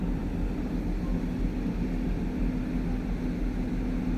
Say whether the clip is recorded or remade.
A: recorded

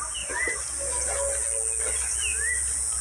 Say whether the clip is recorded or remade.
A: recorded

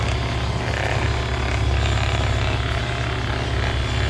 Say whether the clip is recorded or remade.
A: recorded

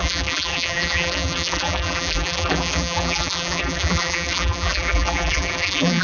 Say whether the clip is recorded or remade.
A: remade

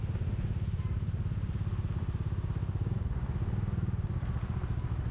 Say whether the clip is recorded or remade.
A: recorded